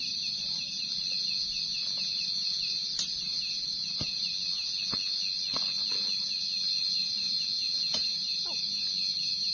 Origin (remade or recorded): recorded